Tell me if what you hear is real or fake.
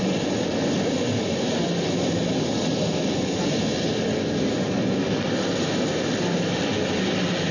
real